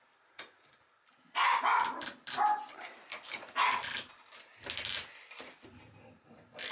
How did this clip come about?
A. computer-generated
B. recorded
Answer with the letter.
B